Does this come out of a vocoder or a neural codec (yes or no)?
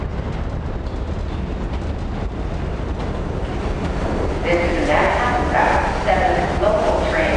no